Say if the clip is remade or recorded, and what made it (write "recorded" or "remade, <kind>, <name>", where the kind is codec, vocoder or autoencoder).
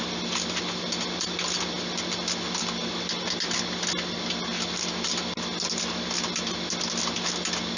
recorded